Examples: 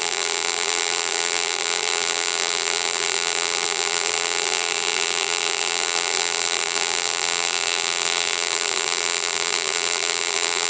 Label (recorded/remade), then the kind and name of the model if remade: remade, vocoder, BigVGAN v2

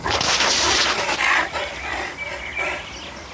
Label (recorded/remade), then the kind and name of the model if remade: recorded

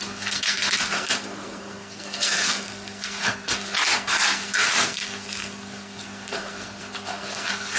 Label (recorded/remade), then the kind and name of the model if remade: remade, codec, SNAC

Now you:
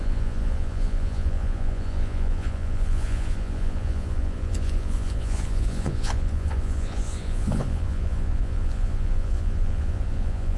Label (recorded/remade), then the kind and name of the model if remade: remade, vocoder, Vocos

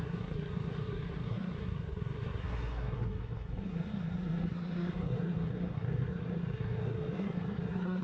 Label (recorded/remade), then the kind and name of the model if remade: remade, codec, SNAC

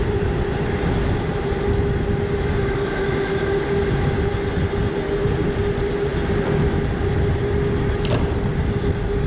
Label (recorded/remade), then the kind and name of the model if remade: recorded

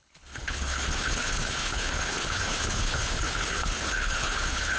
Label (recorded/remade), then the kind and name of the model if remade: remade, codec, HILCodec